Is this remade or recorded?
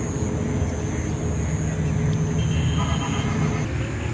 recorded